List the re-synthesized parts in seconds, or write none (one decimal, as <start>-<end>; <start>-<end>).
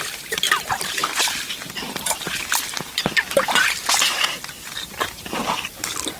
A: 0.0-1.0; 4.7-6.2